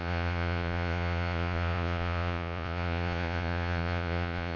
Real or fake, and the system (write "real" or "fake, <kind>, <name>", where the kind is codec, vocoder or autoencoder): fake, vocoder, Vocos